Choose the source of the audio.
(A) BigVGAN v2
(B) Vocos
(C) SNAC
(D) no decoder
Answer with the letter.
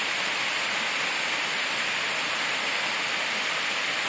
D